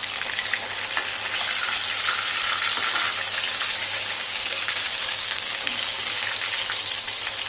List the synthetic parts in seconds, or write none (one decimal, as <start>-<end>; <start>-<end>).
3.8-6.6